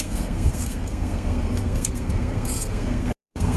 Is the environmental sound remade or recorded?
remade